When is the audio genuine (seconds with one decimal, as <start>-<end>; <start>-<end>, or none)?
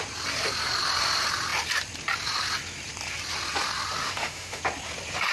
0.0-4.0; 4.6-5.3